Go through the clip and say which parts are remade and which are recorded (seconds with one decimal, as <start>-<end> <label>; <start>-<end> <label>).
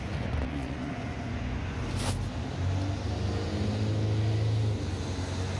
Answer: 0.0-1.8 remade; 1.8-5.6 recorded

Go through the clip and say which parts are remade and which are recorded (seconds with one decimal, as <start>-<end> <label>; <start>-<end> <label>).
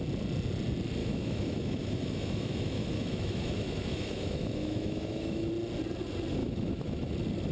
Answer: 0.0-1.0 recorded; 1.0-5.5 remade; 5.5-6.4 recorded; 6.4-7.1 remade; 7.1-7.5 recorded